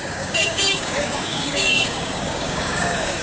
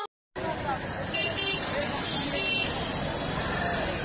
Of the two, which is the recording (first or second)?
second